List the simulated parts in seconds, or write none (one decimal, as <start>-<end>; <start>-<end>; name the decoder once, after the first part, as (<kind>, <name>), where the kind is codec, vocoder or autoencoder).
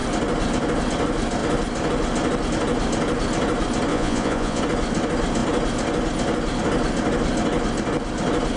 3.9-4.6 (vocoder, Vocos)